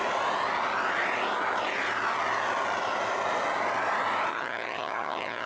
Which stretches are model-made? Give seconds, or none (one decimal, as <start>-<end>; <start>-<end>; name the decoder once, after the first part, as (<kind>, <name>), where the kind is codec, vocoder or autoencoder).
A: 4.3-5.5 (vocoder, HiFi-GAN)